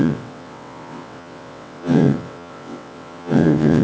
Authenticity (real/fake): fake